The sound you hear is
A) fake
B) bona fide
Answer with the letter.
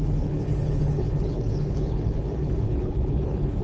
A